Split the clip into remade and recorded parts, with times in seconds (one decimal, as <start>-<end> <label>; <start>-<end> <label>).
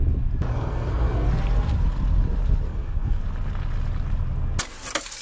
0.0-0.5 recorded; 0.5-1.3 remade; 1.3-2.7 recorded; 2.7-3.2 remade; 3.2-5.2 recorded